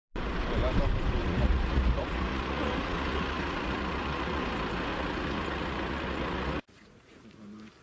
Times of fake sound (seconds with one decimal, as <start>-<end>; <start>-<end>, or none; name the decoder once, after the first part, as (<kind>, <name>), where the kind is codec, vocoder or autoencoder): 1.2-4.4 (vocoder, Vocos); 4.9-7.2